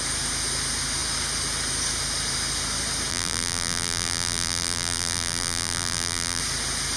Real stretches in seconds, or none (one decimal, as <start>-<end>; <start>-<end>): 0.0-3.1; 6.4-7.0